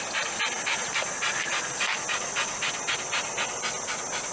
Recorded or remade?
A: recorded